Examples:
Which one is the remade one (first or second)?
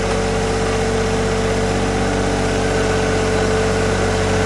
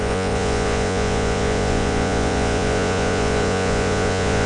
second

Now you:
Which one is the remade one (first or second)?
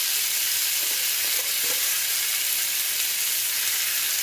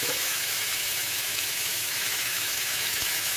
second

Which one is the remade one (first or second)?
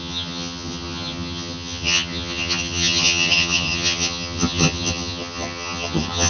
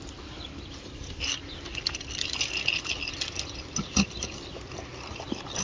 first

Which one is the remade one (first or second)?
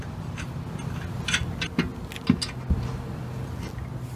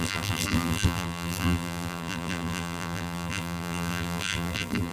second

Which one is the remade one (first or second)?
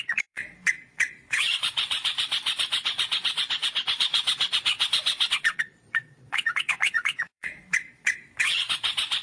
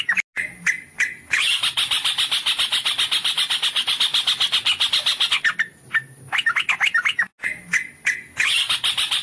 first